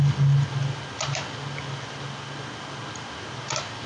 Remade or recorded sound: recorded